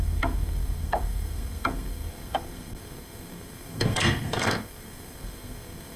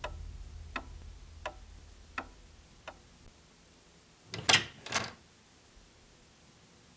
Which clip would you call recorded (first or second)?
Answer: second